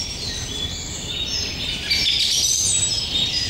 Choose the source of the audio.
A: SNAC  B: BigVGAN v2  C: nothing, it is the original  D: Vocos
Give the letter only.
C